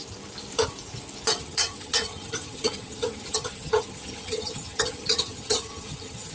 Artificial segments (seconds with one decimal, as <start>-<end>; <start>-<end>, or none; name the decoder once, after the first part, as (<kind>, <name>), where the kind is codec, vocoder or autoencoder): 1.4-6.3 (vocoder, HiFi-GAN)

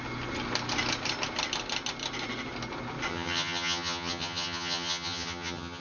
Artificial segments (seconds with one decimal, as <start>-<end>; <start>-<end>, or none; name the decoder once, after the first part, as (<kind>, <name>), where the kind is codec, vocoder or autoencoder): 3.1-5.8 (vocoder, HiFi-GAN)